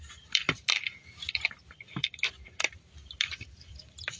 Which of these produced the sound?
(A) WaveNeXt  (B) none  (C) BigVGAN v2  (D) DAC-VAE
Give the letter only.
C